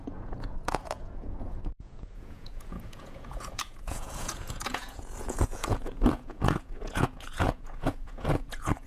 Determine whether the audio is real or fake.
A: fake